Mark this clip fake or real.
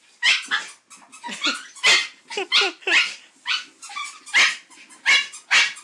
real